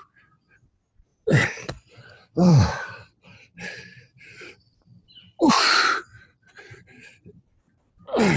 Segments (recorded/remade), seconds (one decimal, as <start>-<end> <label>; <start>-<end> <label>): 0.0-1.1 recorded; 1.1-5.5 remade; 5.5-8.4 recorded